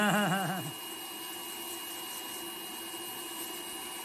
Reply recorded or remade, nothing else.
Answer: recorded